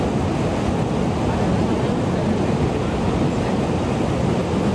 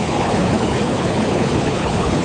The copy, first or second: second